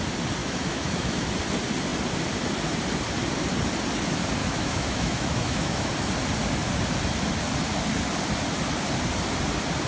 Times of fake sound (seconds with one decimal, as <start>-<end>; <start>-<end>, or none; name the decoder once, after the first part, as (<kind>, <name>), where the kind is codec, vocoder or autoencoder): 0.4-1.3 (autoencoder, DAC-VAE); 4.4-5.9